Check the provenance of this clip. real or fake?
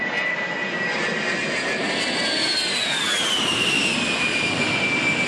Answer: real